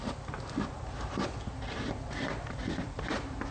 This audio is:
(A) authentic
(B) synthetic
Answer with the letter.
B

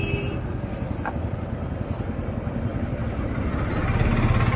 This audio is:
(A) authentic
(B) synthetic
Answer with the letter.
A